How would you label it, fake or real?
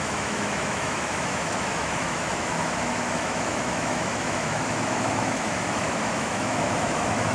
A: fake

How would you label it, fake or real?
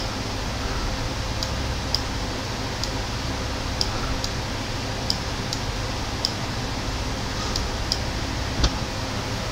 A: real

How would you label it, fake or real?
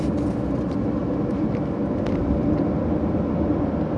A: real